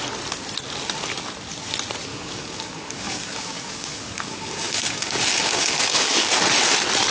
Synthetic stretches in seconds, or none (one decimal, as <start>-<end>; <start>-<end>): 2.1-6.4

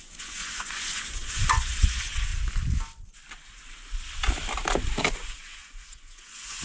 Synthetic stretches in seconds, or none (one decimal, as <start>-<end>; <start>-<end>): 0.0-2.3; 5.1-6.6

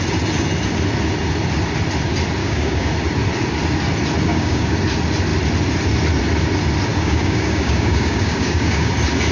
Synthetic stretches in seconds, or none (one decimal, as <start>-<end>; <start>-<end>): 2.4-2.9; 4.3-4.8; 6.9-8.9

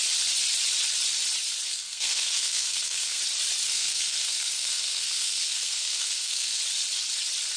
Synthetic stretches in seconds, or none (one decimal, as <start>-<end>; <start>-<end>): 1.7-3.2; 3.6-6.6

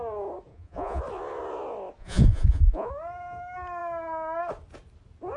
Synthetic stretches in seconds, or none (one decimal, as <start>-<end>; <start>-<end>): 0.5-1.0; 2.0-2.9